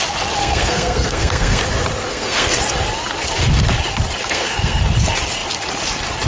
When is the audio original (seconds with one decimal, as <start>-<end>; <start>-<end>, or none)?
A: 0.0-0.4; 1.6-2.1; 2.6-4.2; 4.8-6.3

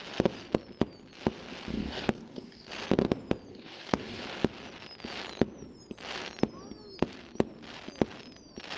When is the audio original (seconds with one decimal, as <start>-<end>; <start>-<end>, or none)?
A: 0.0-1.7; 2.7-3.5; 4.2-8.8